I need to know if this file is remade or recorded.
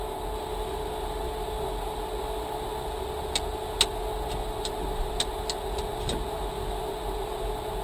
recorded